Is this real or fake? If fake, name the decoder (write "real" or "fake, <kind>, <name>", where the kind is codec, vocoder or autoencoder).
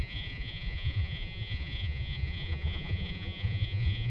fake, vocoder, Vocos